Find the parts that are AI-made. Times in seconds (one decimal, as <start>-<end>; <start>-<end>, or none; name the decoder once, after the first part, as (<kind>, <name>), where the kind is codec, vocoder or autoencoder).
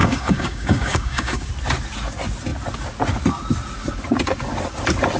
0.0-1.5 (codec, DAC)